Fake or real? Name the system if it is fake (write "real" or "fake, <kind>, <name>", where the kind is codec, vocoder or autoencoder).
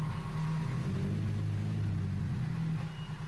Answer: real